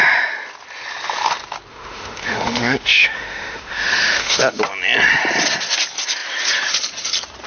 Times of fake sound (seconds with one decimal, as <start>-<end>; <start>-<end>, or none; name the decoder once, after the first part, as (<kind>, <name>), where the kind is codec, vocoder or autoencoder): 1.7-4.6 (autoencoder, DAC-VAE)